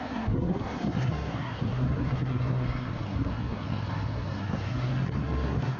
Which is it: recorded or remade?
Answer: remade